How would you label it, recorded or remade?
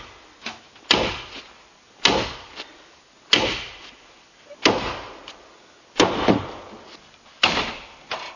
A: recorded